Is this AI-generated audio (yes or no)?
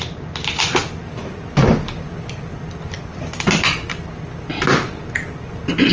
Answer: no